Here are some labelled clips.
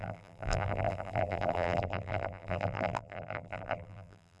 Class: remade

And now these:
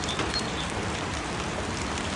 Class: remade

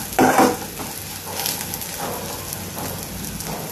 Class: recorded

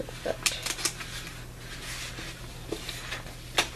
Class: recorded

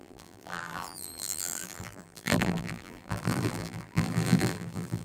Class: remade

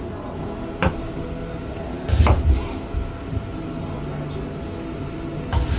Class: recorded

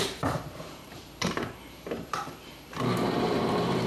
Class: remade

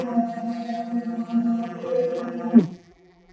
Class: remade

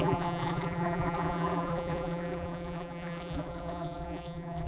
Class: remade